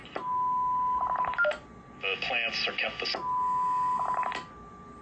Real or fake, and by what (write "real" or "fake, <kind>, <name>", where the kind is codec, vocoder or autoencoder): real